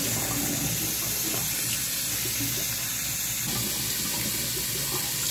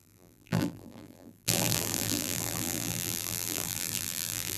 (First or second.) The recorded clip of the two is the first